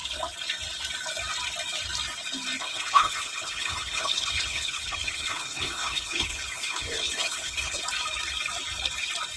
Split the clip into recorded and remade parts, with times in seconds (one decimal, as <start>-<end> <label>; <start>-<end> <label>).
0.0-2.6 recorded; 2.6-7.8 remade; 7.8-9.4 recorded